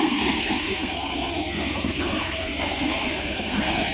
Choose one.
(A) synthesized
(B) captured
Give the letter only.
A